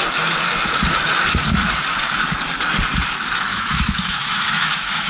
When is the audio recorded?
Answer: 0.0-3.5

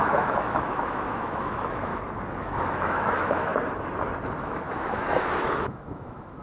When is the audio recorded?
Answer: 1.9-2.4; 3.5-4.4